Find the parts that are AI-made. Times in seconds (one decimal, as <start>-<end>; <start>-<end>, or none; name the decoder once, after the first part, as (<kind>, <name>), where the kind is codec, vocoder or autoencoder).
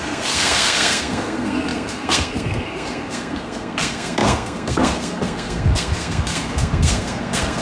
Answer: 0.0-7.6 (codec, SNAC)